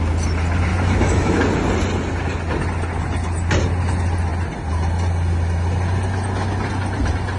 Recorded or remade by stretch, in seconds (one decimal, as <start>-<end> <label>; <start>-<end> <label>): 0.0-0.7 recorded; 0.7-1.4 remade; 1.4-7.4 recorded